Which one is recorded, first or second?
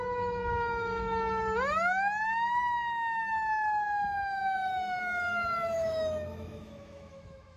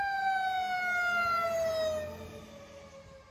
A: second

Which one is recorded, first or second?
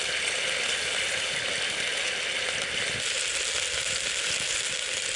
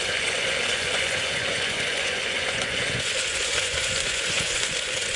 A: first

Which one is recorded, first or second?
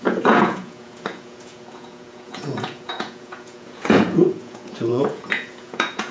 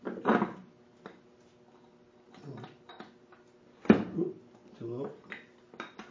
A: second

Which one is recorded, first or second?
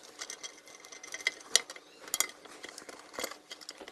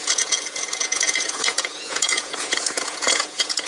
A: first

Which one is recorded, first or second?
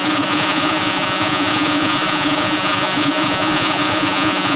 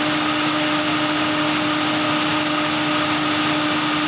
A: second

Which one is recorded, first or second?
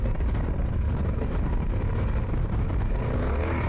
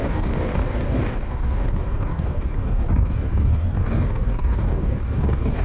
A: first